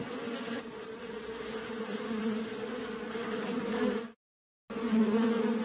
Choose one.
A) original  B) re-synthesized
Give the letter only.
A